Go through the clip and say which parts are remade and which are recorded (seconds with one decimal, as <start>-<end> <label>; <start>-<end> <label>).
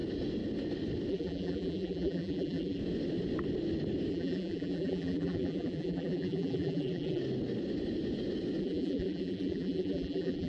0.0-1.1 recorded; 1.1-2.8 remade; 2.8-4.1 recorded; 4.1-7.2 remade; 7.2-8.6 recorded; 8.6-10.5 remade